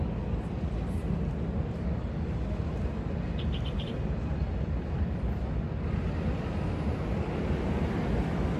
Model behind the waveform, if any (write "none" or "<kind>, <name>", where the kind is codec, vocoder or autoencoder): none